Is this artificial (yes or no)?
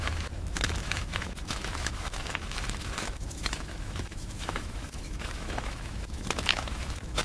yes